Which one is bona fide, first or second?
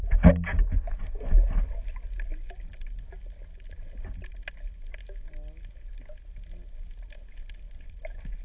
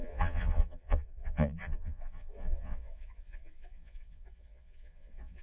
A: first